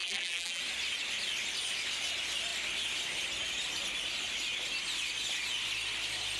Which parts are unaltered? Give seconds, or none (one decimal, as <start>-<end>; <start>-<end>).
0.6-6.4